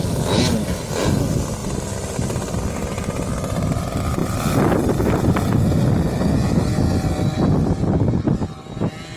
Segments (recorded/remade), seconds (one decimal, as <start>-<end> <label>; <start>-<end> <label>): 0.0-1.6 recorded; 1.6-2.7 remade; 2.7-4.2 recorded; 4.2-5.5 remade; 5.5-9.2 recorded